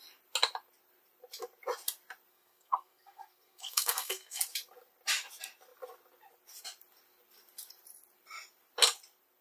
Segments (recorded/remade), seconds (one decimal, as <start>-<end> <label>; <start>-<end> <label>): 0.0-2.3 recorded; 2.3-4.4 remade; 4.4-9.4 recorded